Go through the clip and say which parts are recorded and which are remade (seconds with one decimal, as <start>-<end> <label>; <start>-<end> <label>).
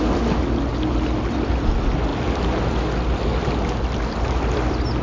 0.0-5.0 recorded